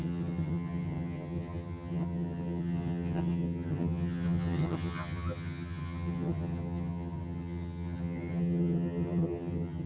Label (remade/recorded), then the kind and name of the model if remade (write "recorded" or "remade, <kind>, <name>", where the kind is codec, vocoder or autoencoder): remade, vocoder, HiFi-GAN